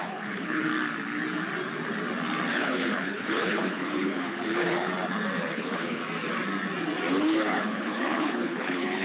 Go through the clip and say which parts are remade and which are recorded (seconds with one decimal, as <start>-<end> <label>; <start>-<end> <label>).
0.0-0.7 remade; 0.7-2.5 recorded; 2.5-4.9 remade; 4.9-5.4 recorded; 5.4-6.0 remade; 6.0-7.1 recorded; 7.1-9.0 remade